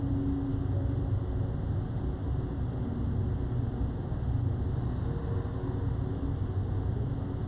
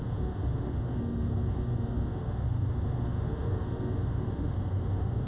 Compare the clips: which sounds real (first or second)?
first